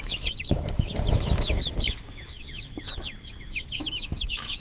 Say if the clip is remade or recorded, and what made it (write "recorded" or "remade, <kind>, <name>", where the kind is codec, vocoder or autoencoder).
remade, autoencoder, DAC-VAE